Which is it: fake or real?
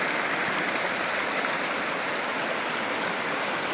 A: real